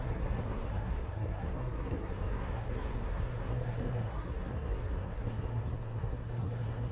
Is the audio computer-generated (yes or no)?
yes